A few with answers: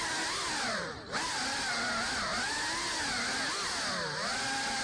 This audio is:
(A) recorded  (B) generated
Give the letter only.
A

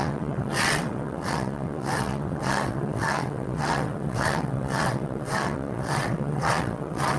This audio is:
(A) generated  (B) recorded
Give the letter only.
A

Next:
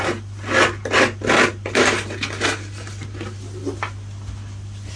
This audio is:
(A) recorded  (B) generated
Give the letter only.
A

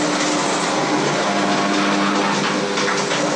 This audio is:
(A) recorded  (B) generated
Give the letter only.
A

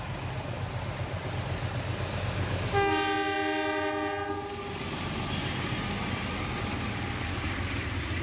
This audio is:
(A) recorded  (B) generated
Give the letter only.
A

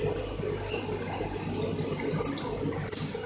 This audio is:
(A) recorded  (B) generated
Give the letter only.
A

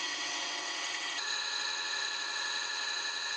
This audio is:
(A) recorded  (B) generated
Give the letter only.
B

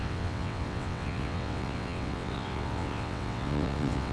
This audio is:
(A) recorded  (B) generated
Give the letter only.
B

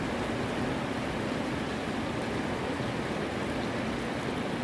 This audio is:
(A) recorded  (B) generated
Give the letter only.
A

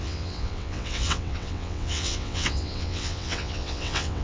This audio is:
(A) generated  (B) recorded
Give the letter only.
A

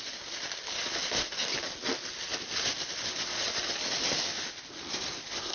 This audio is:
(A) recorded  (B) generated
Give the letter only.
A